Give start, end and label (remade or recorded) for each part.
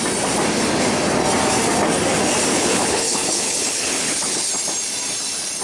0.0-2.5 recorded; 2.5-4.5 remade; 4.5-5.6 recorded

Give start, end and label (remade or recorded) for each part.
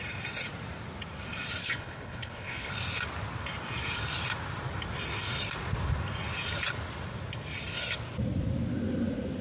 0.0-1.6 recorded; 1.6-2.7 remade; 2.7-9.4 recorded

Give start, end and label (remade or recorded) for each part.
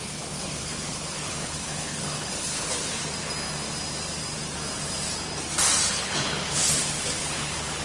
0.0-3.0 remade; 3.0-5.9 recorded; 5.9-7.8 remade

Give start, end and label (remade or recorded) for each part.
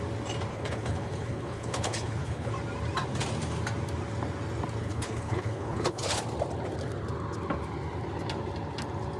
0.0-0.5 recorded; 0.5-2.5 remade; 2.5-4.8 recorded; 4.8-6.2 remade; 6.2-9.2 recorded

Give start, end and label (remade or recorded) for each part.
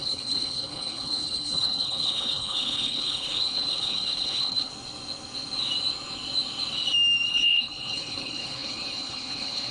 0.0-4.7 remade; 4.7-7.3 recorded; 7.3-9.7 remade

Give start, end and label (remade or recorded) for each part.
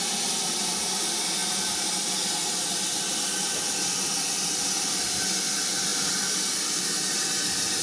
0.0-7.8 recorded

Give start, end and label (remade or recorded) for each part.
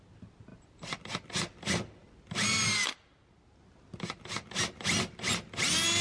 0.0-6.0 recorded